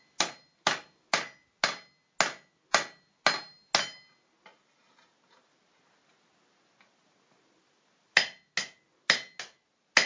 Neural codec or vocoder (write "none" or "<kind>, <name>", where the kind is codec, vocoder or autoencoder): none